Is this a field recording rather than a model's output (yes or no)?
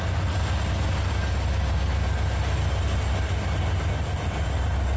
yes